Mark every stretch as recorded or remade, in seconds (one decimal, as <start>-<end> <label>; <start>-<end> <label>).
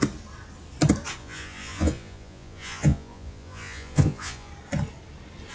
0.0-1.2 recorded; 1.2-4.5 remade; 4.5-5.5 recorded